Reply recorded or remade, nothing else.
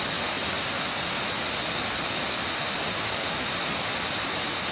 recorded